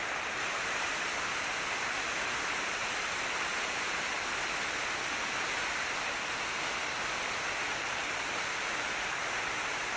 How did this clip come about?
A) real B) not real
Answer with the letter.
A